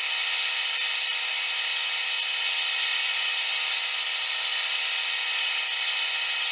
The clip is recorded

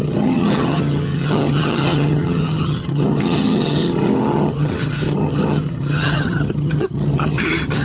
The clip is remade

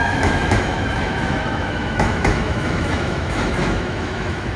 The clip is remade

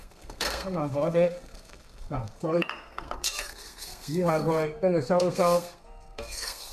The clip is remade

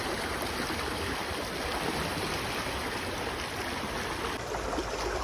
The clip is recorded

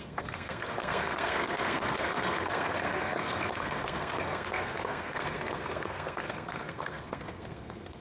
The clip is remade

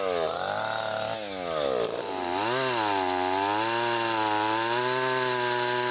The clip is recorded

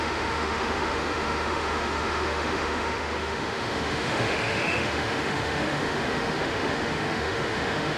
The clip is remade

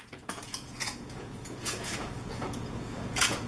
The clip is remade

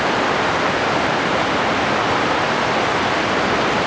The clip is recorded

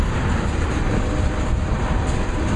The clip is recorded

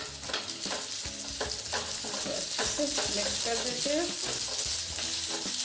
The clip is recorded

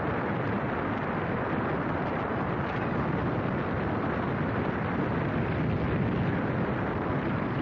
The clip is recorded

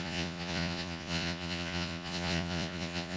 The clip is remade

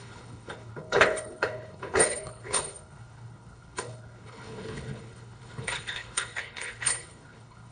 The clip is remade